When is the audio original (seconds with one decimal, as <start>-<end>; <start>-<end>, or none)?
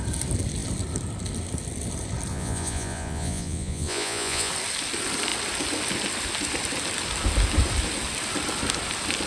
0.0-2.3; 4.5-9.3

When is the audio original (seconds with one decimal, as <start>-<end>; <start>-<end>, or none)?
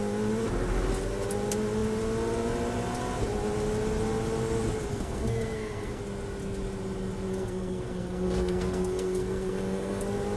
0.0-4.9; 6.0-7.3; 10.0-10.4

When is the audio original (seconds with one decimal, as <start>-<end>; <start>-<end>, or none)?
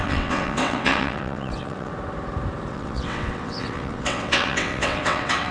1.9-2.7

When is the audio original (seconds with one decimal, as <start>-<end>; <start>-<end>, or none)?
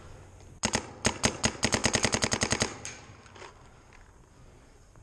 0.0-5.0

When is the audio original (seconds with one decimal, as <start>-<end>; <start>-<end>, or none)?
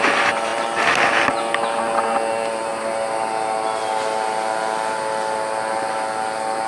0.5-2.3; 2.7-5.7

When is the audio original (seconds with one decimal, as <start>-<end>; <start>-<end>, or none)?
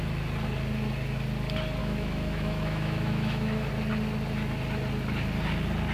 0.0-1.8; 3.7-5.9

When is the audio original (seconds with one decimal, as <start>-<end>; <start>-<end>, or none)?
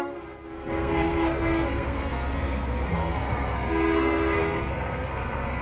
none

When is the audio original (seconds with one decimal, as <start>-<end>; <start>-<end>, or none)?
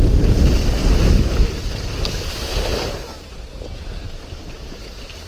0.0-5.3